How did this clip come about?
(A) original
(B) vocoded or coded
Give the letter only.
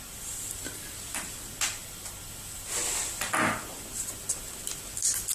A